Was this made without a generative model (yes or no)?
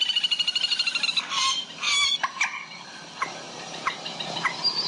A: yes